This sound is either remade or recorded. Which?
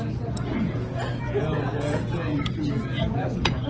remade